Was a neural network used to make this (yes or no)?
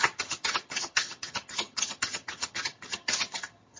yes